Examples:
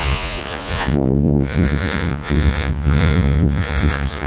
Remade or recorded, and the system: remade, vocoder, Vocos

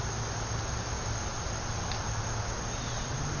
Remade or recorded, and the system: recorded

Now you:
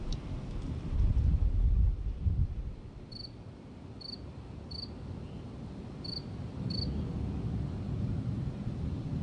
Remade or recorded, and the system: recorded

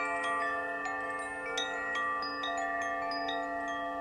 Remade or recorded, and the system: recorded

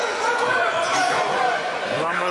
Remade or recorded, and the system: remade, vocoder, Vocos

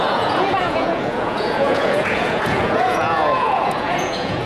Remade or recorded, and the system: remade, vocoder, Vocos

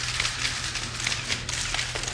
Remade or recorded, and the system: recorded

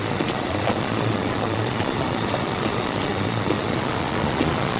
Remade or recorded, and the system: remade, vocoder, Vocos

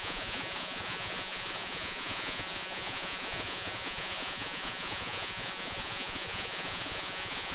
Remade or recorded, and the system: remade, vocoder, Vocos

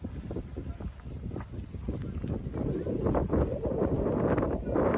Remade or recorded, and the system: recorded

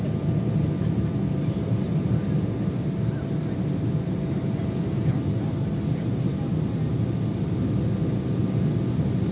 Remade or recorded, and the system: recorded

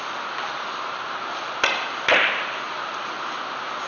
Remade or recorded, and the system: recorded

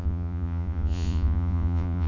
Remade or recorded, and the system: remade, vocoder, Vocos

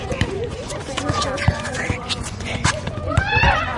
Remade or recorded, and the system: remade, vocoder, Vocos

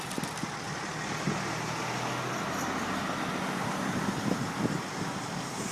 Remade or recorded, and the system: recorded